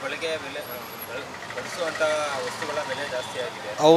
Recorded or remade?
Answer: recorded